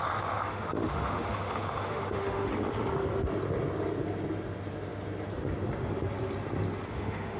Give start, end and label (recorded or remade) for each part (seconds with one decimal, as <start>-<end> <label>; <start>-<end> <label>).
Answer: 0.0-2.5 remade; 2.5-6.9 recorded; 6.9-7.4 remade